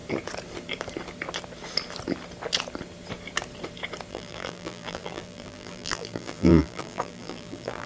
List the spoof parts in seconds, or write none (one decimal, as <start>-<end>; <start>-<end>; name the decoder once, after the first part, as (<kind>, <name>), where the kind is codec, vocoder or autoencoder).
4.1-7.9 (vocoder, BigVGAN v2)